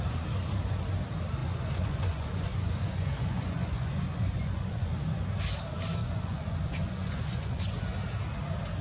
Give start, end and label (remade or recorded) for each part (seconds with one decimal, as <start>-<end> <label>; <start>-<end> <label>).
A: 0.0-1.4 recorded; 1.4-5.3 remade; 5.3-6.0 recorded; 6.0-7.9 remade; 7.9-8.8 recorded